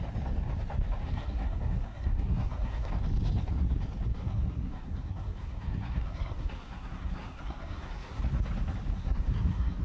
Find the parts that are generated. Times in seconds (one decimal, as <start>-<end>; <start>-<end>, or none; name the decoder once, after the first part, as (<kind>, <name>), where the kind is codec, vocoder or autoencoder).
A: 1.0-2.9 (codec, SNAC); 4.1-8.2; 8.9-9.8